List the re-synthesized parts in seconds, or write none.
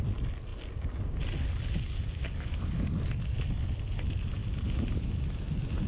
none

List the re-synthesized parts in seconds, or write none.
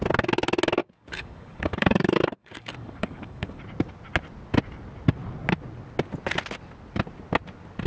0.8-3.6 (codec, DAC)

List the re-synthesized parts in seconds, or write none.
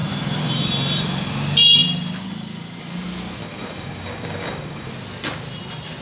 3.4-4.9 (codec, DAC)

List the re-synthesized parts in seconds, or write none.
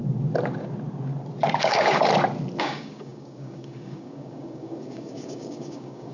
1.6-2.1 (codec, DAC); 2.6-6.1